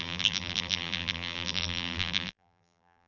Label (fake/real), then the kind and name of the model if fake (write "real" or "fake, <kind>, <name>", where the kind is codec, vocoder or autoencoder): fake, vocoder, BigVGAN v2